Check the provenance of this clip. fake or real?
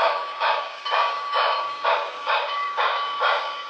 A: fake